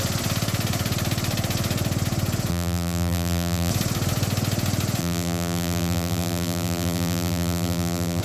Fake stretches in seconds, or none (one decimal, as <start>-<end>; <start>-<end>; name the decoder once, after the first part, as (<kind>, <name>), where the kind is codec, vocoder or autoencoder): 2.5-3.7 (vocoder, BigVGAN v2); 5.0-8.2